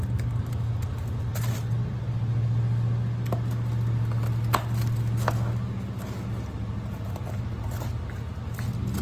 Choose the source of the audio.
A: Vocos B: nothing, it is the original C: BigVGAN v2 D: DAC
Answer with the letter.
B